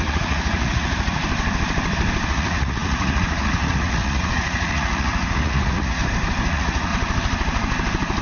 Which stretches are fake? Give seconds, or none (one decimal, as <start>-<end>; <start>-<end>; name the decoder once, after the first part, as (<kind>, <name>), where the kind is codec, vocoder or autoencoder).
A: 0.0-1.2 (vocoder, Vocos); 2.3-6.0; 6.5-6.9

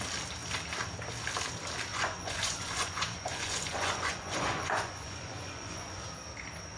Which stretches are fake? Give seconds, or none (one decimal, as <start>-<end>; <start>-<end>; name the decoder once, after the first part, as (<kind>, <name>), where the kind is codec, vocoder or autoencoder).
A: 1.9-6.0 (vocoder, Vocos)

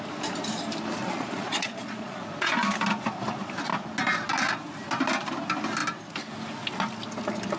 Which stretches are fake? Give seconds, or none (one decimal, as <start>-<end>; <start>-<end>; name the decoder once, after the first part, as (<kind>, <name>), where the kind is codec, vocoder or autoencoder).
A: 1.0-2.2 (vocoder, Vocos)

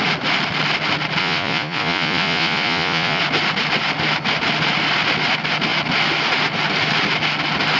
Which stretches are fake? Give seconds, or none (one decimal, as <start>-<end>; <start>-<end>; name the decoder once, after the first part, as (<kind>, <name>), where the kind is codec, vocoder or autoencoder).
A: 1.2-3.2 (vocoder, Vocos)

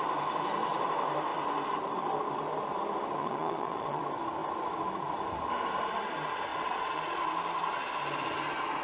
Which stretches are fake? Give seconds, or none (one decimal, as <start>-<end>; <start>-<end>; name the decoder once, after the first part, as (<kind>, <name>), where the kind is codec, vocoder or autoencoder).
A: 3.2-4.0 (vocoder, Vocos); 6.5-7.2

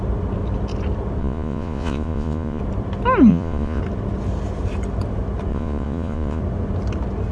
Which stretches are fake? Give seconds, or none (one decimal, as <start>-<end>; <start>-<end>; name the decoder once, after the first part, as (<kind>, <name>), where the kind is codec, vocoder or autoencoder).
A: 1.2-2.6 (vocoder, Vocos); 3.3-3.8; 5.5-6.4

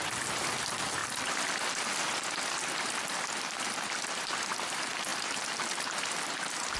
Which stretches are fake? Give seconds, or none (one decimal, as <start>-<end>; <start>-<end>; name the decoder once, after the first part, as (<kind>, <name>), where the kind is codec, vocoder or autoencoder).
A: none

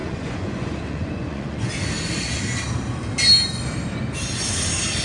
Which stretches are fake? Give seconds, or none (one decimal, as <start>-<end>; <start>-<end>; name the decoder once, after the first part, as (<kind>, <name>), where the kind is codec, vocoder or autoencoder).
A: 0.0-1.7 (vocoder, Vocos)